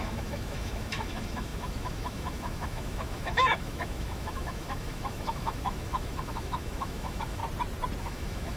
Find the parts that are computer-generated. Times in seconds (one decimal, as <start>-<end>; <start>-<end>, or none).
0.0-7.4; 8.0-8.6